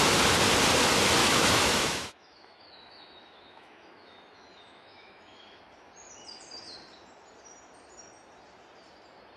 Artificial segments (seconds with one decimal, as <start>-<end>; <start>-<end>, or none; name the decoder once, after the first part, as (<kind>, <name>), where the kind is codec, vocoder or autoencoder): 1.2-5.6 (autoencoder, DAC-VAE)